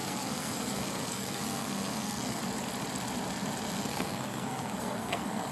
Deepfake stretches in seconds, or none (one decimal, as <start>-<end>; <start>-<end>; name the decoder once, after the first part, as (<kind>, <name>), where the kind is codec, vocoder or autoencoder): 0.0-2.4 (codec, SNAC); 3.8-5.5